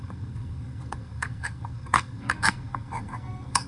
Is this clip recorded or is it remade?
remade